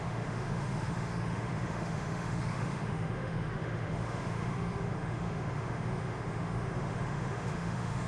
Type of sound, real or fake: fake